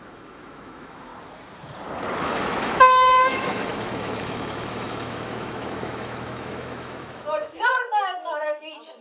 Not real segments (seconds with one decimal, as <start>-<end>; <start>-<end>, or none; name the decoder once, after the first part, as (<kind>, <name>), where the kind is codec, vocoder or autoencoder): 0.0-1.1 (autoencoder, DAC-VAE); 2.2-9.0